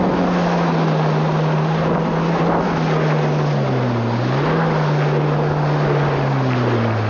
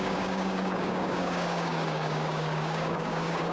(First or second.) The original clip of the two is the first